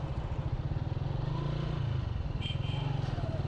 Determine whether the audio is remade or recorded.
recorded